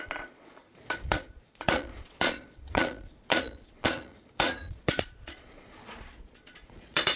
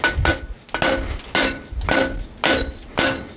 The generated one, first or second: first